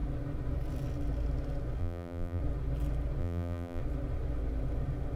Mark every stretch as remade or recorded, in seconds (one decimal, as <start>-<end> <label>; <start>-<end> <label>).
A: 0.0-1.8 recorded; 1.8-2.4 remade; 2.4-3.2 recorded; 3.2-3.8 remade; 3.8-5.2 recorded